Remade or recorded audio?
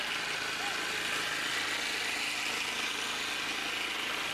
recorded